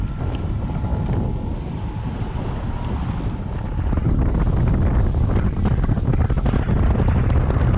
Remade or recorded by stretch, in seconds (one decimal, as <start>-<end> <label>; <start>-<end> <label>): 0.0-7.8 recorded